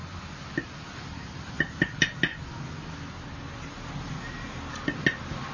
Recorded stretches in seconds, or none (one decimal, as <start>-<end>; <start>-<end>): 0.0-5.5